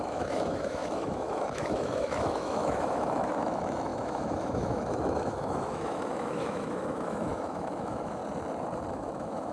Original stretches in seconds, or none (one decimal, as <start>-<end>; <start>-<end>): 8.2-8.9